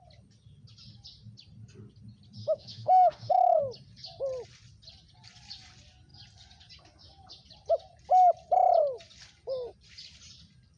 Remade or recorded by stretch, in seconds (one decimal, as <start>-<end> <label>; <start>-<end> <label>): 0.0-2.4 recorded; 2.4-3.6 remade; 3.6-10.8 recorded

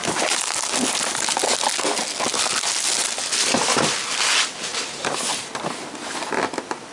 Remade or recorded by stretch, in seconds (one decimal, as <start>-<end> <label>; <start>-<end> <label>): 0.0-6.9 recorded

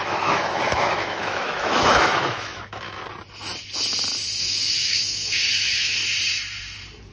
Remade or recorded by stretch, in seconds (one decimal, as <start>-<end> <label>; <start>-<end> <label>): 0.0-3.0 remade; 3.0-4.4 recorded; 4.4-6.0 remade; 6.0-7.1 recorded

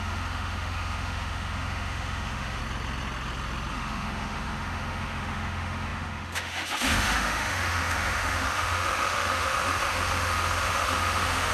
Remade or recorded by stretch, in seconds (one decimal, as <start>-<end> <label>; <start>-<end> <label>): 0.0-2.6 remade; 2.6-3.7 recorded; 3.7-11.5 remade

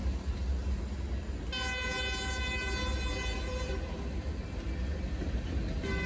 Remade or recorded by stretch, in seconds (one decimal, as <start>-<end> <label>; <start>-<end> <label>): 0.0-6.1 recorded

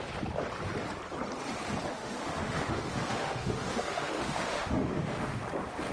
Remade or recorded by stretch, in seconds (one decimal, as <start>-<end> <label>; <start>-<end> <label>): 0.0-1.9 recorded; 1.9-5.4 remade; 5.4-5.9 recorded